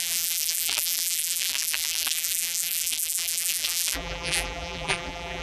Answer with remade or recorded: remade